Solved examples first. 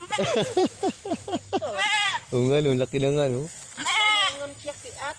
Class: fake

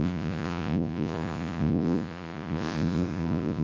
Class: fake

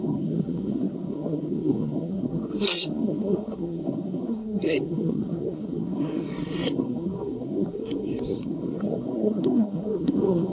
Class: fake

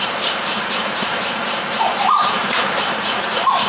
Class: fake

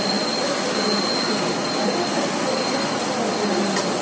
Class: real